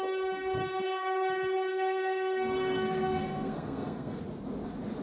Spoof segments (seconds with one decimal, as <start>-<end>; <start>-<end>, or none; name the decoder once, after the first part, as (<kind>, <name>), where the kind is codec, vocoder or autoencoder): 1.7-4.2 (codec, SNAC)